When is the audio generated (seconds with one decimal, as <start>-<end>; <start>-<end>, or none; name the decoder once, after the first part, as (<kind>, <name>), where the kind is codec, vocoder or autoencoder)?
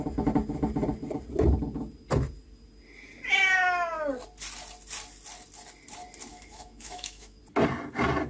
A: 6.3-7.4 (autoencoder, DAC-VAE)